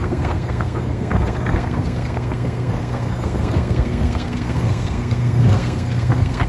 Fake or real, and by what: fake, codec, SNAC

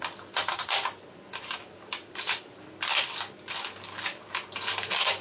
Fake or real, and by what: real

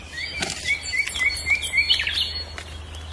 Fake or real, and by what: real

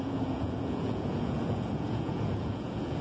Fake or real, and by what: fake, vocoder, Vocos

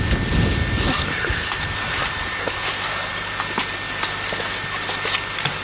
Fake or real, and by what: real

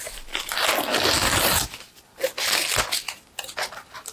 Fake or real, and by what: real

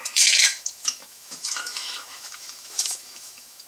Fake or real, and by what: fake, autoencoder, DAC-VAE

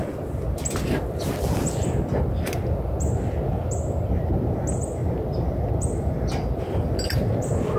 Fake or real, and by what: real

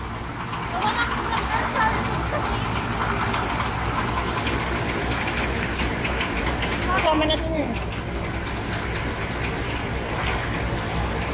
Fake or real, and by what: real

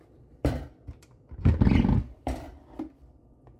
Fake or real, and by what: fake, vocoder, BigVGAN v2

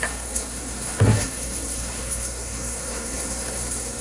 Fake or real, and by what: fake, codec, SNAC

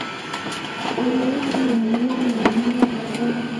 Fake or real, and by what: real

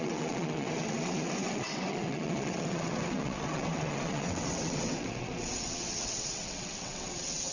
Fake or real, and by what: fake, vocoder, WaveNeXt